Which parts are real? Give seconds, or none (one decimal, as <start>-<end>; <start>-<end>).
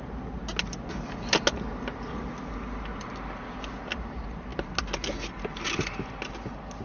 0.0-6.8